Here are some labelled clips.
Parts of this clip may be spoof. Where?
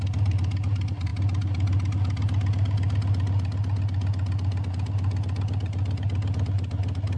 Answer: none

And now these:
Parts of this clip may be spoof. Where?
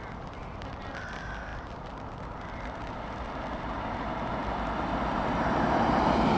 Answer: 0.0-4.4 (vocoder, BigVGAN v2); 5.0-6.4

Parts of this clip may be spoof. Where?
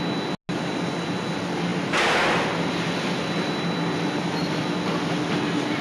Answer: none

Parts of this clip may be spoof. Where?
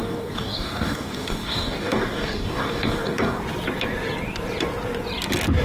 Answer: 0.0-3.4 (codec, DAC)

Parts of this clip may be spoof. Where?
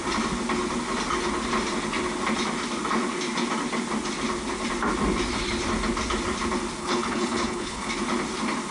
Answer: 6.8-7.9 (codec, HILCodec)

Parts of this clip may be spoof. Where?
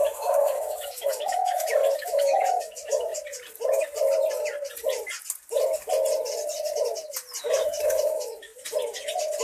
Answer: 0.0-3.1 (autoencoder, DAC-VAE); 7.4-8.5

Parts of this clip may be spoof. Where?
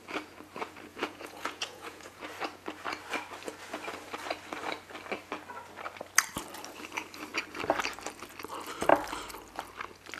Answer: 0.9-2.2 (vocoder, Vocos)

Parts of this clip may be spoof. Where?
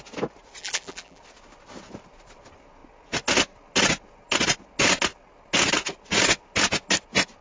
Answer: 0.6-1.2 (vocoder, BigVGAN v2)